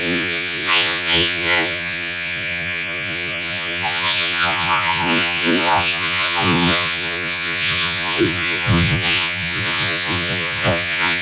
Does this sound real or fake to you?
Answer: fake